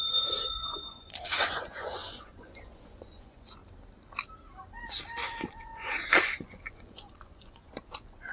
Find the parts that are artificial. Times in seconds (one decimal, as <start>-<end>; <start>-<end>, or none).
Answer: 0.0-3.6; 5.5-8.3